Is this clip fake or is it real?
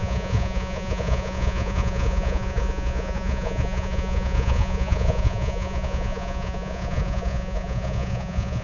fake